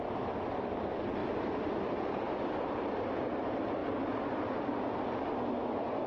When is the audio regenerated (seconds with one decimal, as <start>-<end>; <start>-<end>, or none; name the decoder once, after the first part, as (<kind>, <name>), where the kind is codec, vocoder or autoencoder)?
none

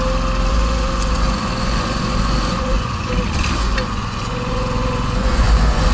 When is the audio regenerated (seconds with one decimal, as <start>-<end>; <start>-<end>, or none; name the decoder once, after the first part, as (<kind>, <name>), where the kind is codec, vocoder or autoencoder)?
0.5-3.1 (vocoder, Vocos); 3.6-5.9

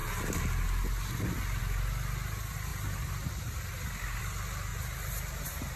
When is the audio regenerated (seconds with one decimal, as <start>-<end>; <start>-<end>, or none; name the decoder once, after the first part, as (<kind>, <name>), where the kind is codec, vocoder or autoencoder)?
4.7-5.8 (vocoder, BigVGAN v2)

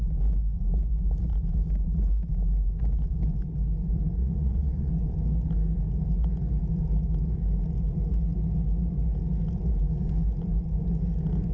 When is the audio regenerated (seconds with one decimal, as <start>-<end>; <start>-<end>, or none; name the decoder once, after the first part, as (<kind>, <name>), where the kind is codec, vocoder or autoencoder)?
4.2-4.9 (vocoder, Vocos)

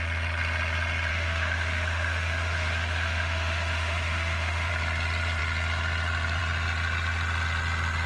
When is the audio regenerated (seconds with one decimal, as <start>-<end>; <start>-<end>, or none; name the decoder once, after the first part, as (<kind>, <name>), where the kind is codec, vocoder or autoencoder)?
1.1-4.7 (autoencoder, DAC-VAE)